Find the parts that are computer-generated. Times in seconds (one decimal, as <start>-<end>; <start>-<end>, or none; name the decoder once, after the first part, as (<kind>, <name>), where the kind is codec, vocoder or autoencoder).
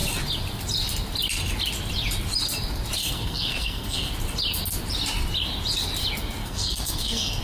3.0-4.1 (codec, SNAC); 6.4-7.4